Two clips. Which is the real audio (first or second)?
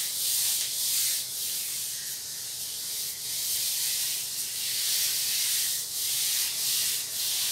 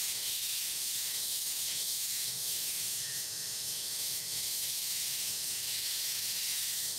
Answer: first